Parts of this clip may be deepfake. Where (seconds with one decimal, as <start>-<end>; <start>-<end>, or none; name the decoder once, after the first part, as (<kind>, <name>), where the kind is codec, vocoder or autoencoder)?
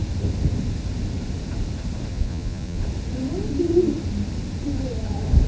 2.1-2.8 (vocoder, Vocos)